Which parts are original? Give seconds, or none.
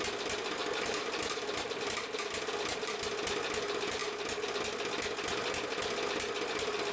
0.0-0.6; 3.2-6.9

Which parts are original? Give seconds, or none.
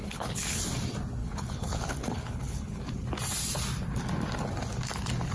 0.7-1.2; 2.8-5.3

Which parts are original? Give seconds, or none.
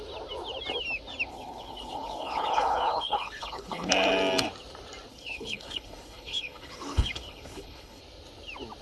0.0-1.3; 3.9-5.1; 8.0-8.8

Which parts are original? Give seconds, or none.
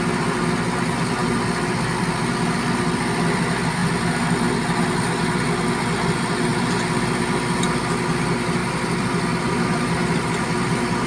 0.0-11.1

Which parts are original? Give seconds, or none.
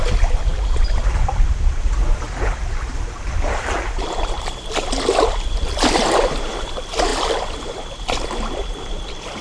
0.0-9.4